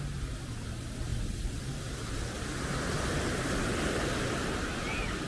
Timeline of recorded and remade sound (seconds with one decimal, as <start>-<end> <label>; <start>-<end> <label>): 0.0-5.3 recorded